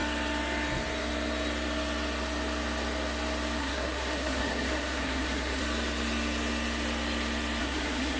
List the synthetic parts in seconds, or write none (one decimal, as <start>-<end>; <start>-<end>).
3.6-5.6; 7.6-8.2

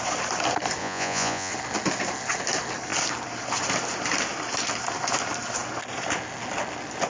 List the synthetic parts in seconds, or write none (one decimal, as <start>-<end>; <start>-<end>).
0.8-1.5

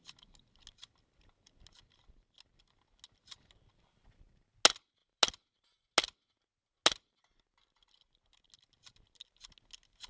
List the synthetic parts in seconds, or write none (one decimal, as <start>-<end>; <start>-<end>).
none

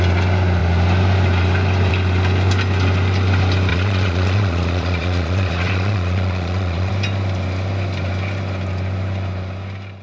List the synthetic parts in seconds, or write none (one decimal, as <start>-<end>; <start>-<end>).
3.7-6.9

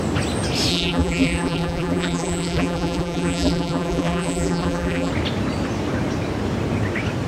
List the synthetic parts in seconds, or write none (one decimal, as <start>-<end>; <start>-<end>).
0.7-5.1

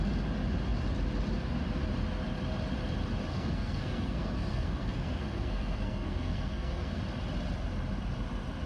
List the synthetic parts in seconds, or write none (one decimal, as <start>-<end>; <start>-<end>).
3.3-7.0

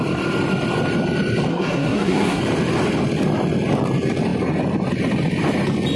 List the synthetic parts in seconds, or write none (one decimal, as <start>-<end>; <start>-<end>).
1.5-2.4

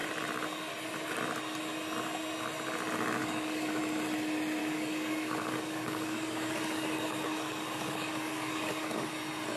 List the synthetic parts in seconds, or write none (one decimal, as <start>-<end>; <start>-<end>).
3.2-3.8; 4.6-9.1